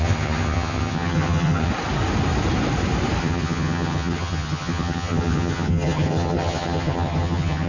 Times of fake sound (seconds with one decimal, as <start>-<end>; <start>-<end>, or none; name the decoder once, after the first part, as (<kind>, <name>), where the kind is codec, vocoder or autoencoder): 0.0-1.7 (vocoder, HiFi-GAN); 3.2-7.7